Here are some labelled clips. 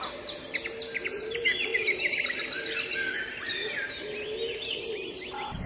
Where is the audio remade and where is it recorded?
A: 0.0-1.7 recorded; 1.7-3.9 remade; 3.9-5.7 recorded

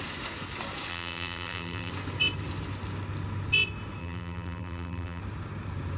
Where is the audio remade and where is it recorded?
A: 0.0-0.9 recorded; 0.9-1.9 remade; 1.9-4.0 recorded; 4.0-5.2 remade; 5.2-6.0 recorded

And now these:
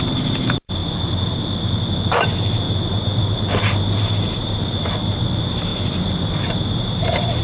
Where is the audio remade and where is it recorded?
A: 0.0-0.8 remade; 0.8-3.0 recorded; 3.0-7.4 remade

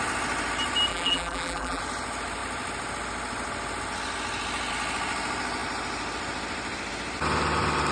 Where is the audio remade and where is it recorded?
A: 0.0-0.9 recorded; 0.9-1.8 remade; 1.8-7.9 recorded